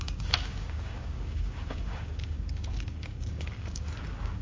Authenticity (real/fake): fake